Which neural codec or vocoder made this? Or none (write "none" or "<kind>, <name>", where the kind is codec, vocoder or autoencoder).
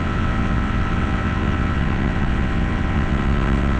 vocoder, WaveNeXt